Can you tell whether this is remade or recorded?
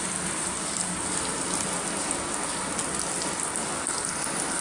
recorded